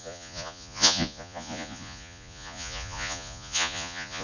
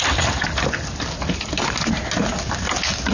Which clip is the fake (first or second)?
first